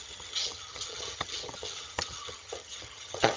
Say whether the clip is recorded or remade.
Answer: remade